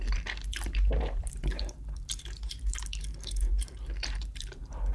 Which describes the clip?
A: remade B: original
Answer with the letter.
A